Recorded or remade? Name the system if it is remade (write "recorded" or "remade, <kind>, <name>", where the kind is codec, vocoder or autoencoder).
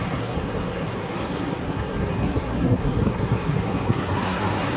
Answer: remade, codec, SNAC